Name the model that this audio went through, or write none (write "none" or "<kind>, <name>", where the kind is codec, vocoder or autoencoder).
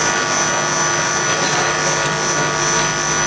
none